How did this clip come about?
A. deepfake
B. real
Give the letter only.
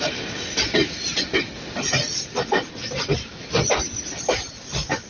B